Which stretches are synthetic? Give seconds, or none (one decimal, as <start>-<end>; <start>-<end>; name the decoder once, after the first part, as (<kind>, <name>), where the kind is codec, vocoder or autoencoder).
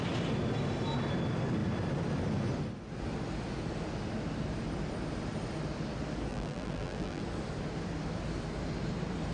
6.3-7.2 (vocoder, BigVGAN v2)